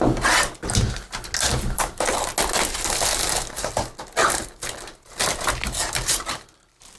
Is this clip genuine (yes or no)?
yes